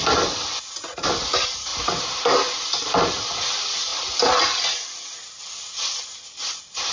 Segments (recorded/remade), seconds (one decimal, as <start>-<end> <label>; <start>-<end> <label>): 0.0-6.9 recorded